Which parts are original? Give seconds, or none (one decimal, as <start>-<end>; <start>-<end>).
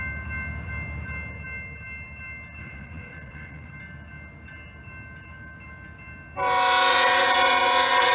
0.0-2.6; 3.7-6.9